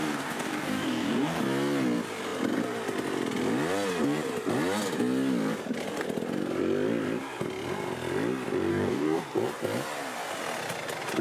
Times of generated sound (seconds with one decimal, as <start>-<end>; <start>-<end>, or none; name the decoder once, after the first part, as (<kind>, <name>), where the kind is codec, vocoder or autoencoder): 0.0-1.4 (codec, DAC); 8.7-9.2